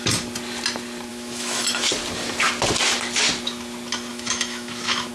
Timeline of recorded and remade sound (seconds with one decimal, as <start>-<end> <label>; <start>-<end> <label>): 0.0-1.1 recorded; 1.1-1.9 remade; 1.9-4.1 recorded; 4.1-5.1 remade